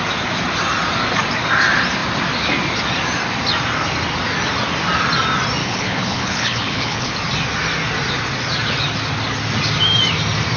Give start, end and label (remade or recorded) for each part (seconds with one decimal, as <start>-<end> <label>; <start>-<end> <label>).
0.0-5.6 recorded; 5.6-7.1 remade; 7.1-10.6 recorded

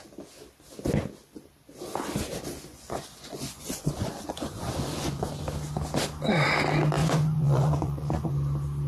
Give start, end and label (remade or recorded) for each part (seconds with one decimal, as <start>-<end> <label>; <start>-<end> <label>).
0.0-2.7 recorded; 2.7-5.2 remade; 5.2-7.0 recorded; 7.0-8.3 remade; 8.3-8.9 recorded